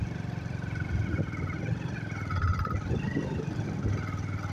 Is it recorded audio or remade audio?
remade